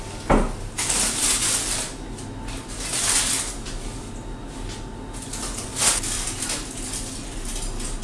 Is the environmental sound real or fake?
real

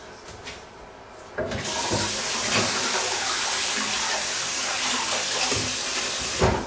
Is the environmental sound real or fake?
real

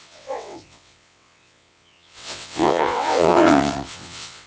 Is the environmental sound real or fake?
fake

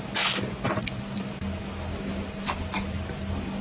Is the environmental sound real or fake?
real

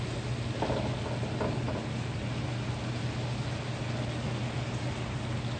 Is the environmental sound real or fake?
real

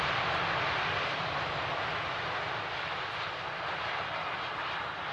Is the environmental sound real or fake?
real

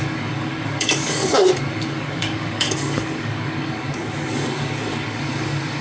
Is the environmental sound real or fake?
fake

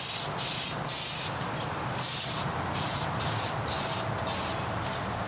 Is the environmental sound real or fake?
real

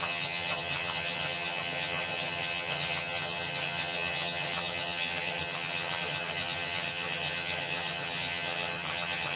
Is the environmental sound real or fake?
fake